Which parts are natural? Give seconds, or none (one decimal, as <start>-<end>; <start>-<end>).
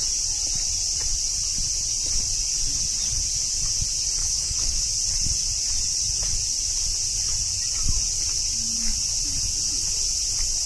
0.0-4.2; 4.8-10.7